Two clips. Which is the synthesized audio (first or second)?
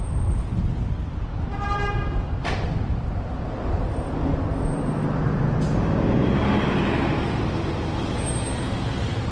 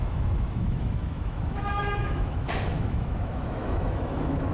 second